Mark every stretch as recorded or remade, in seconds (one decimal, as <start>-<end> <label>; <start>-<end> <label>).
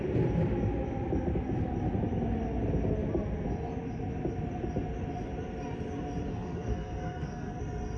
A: 0.0-6.3 recorded; 6.3-7.6 remade; 7.6-8.0 recorded